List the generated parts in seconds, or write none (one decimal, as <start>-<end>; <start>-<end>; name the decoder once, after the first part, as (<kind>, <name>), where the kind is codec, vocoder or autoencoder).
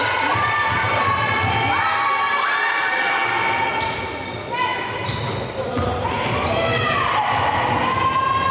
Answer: 0.0-0.9 (vocoder, BigVGAN v2); 4.7-6.2